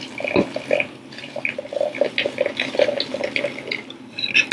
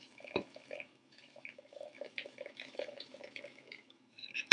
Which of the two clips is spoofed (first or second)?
second